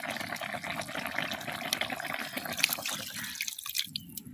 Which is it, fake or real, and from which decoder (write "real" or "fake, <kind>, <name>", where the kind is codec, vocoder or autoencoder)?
real